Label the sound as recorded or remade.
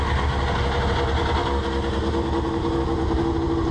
recorded